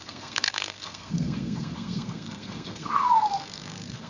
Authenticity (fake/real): fake